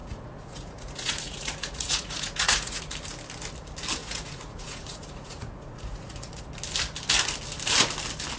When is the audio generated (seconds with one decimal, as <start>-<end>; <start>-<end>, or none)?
0.0-2.8; 4.0-6.4